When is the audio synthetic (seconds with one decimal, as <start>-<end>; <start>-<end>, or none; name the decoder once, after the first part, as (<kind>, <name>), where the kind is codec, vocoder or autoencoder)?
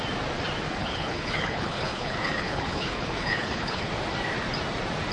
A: 0.8-3.9 (codec, HILCodec)